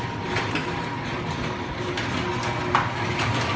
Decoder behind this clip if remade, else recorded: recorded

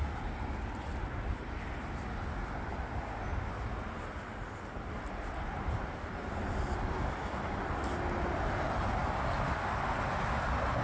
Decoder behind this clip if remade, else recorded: recorded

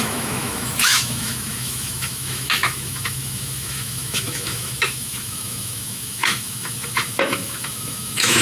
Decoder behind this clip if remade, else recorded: remade, autoencoder, DAC-VAE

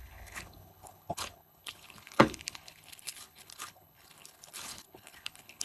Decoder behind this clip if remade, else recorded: remade, codec, HILCodec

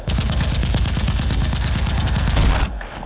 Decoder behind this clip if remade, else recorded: remade, codec, SNAC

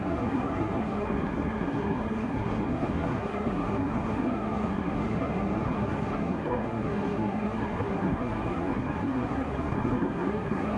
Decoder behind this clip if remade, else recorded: remade, codec, SNAC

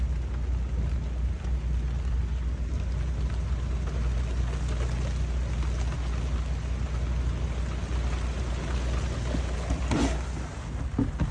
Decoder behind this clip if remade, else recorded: recorded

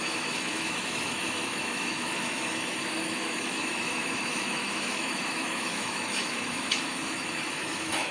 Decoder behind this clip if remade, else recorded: remade, autoencoder, DAC-VAE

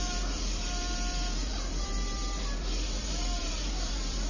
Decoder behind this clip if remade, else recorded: remade, vocoder, BigVGAN v2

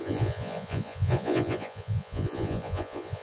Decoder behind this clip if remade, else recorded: remade, vocoder, Vocos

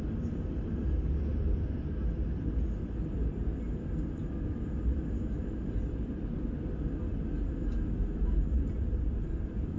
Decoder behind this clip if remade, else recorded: recorded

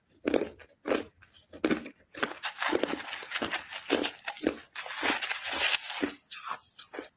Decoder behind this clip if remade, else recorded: recorded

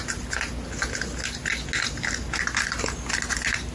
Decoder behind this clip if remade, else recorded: recorded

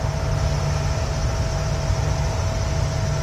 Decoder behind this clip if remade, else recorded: recorded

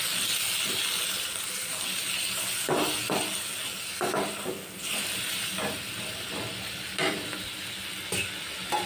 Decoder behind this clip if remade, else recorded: recorded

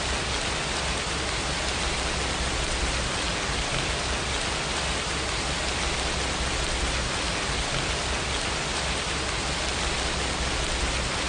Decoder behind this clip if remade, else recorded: recorded